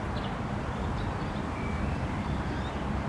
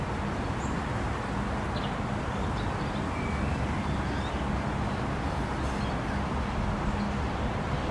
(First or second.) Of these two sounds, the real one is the second